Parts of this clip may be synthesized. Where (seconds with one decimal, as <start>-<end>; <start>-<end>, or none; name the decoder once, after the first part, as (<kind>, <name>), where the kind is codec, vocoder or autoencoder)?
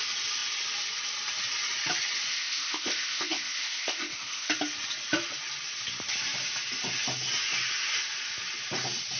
2.3-4.5 (codec, ZipCodec)